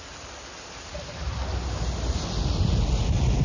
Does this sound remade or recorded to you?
recorded